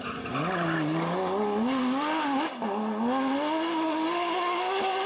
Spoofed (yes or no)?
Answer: no